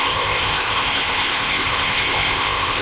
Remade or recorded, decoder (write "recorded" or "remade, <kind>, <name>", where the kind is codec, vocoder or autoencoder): remade, codec, ZipCodec